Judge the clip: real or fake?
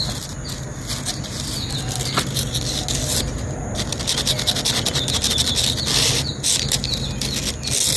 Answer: real